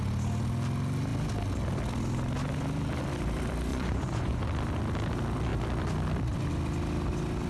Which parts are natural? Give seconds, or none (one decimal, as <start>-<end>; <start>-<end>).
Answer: 0.0-3.7; 4.4-7.5